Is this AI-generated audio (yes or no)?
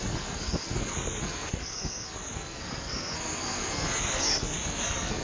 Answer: yes